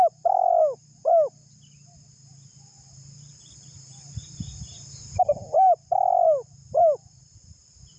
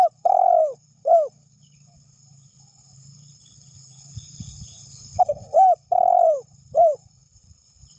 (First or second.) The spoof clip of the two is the second